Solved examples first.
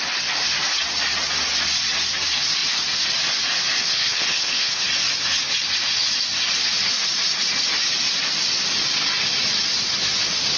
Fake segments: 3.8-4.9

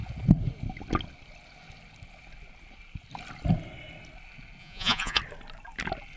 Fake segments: 4.6-5.2